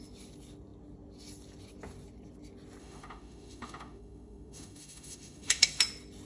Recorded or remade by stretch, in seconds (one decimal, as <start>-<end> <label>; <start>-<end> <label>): 0.0-2.8 recorded; 2.8-5.8 remade; 5.8-6.3 recorded